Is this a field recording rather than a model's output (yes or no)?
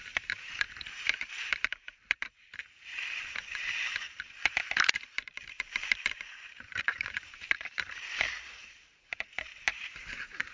no